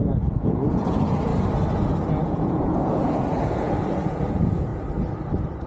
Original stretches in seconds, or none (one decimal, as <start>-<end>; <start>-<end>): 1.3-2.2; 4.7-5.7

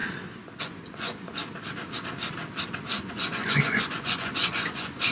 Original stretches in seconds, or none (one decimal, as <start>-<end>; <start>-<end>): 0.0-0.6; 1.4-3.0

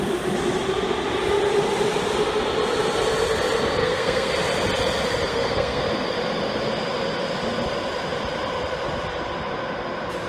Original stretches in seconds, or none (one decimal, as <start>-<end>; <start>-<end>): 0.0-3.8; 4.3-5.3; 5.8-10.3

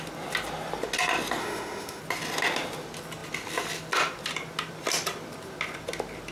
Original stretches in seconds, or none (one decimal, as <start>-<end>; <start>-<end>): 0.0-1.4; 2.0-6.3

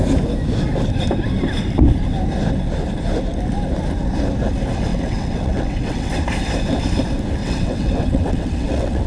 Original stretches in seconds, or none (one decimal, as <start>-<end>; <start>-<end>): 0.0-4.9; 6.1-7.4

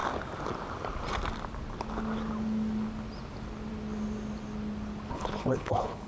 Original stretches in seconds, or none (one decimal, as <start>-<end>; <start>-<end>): 0.0-5.1

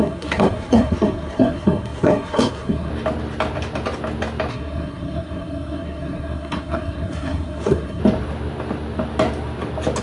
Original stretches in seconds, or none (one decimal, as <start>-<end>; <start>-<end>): 2.9-4.5; 8.0-10.0